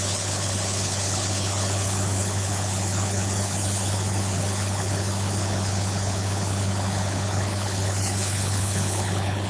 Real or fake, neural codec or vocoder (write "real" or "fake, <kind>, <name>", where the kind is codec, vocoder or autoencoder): fake, codec, HILCodec